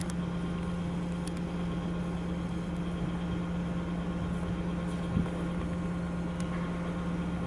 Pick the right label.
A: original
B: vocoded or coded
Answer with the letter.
A